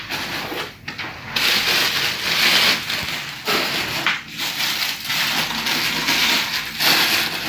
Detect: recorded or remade recorded